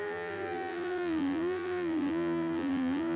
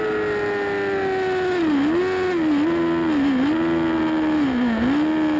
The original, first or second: second